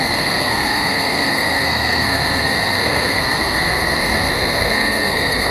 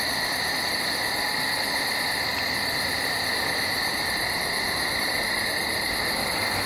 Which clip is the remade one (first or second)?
first